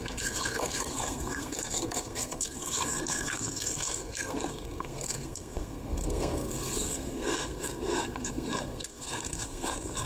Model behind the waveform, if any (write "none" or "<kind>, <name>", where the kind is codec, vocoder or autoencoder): codec, SNAC